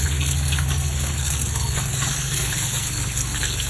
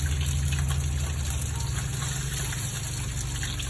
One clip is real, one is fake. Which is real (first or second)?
second